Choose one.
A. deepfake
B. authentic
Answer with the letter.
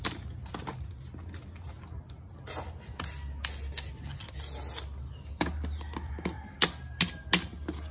B